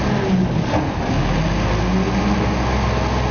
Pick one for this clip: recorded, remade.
recorded